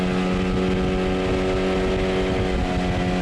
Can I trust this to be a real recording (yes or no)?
yes